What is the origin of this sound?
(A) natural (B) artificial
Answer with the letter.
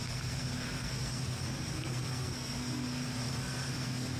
B